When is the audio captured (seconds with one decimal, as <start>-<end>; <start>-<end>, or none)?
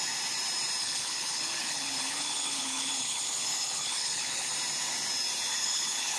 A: 0.0-0.8; 4.5-5.6